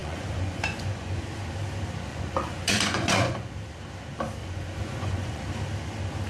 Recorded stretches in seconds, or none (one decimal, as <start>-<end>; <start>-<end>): 1.2-2.1; 3.5-4.4; 5.4-6.3